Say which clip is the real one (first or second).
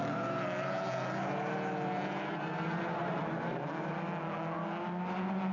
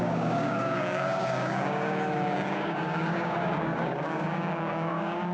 first